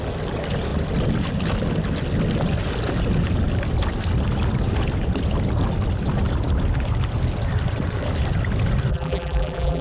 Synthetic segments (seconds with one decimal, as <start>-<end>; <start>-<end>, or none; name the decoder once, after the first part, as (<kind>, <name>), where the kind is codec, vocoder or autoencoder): 8.9-9.8 (vocoder, BigVGAN v2)